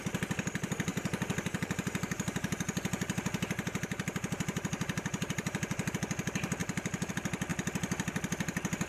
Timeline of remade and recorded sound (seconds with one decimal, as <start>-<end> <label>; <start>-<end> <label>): 0.0-0.9 recorded; 0.9-5.9 remade; 5.9-6.6 recorded; 6.6-7.1 remade; 7.1-8.9 recorded